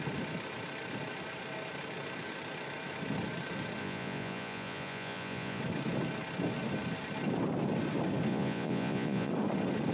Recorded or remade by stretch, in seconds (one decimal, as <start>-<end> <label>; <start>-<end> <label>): 0.0-3.8 recorded; 3.8-5.6 remade; 5.6-8.3 recorded; 8.3-9.3 remade; 9.3-9.9 recorded